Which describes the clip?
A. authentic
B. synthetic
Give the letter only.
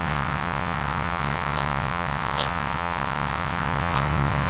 B